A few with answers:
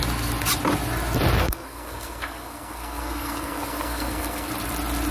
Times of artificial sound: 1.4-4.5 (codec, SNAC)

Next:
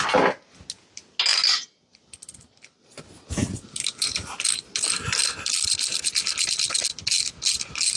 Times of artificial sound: none

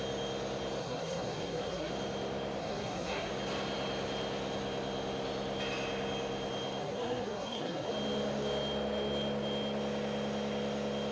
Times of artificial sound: 0.8-1.9 (codec, SNAC); 2.6-3.3; 6.8-7.9

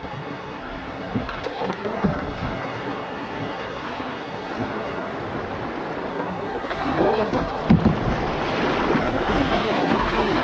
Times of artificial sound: 0.0-5.1 (codec, SNAC); 6.1-7.6; 9.0-10.4